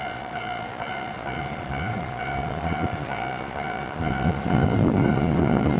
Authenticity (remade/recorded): remade